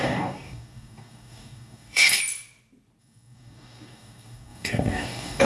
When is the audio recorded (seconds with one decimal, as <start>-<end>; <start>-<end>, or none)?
2.2-3.0